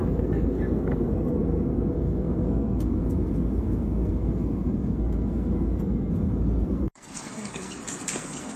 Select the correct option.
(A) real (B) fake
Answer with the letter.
B